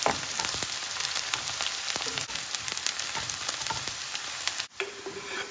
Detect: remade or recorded remade